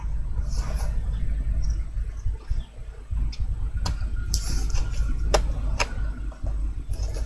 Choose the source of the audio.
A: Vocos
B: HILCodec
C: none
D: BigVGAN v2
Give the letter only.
C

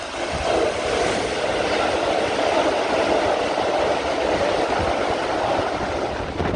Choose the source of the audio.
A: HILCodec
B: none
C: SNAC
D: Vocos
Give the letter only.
B